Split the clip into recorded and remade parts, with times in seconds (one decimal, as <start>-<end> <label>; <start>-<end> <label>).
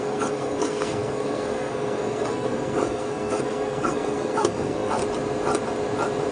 0.0-5.0 remade; 5.0-6.3 recorded